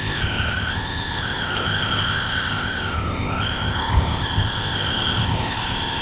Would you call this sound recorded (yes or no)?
no